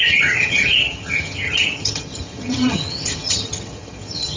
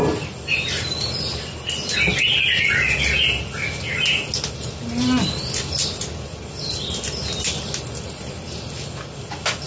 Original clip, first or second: second